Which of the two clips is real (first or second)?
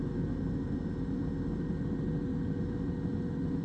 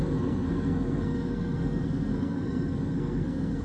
first